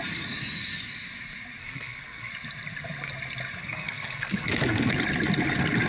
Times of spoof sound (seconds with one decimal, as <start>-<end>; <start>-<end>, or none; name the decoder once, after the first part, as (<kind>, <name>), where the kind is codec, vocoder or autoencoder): 1.6-2.3 (codec, SNAC); 3.6-4.9

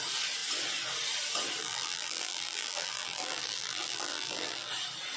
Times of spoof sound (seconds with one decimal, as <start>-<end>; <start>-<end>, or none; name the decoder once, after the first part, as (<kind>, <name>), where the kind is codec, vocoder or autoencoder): 1.6-4.7 (vocoder, BigVGAN v2)

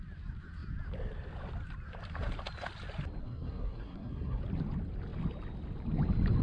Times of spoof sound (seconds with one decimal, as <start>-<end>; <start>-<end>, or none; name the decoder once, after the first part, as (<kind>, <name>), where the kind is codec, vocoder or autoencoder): 3.2-4.4 (codec, SNAC)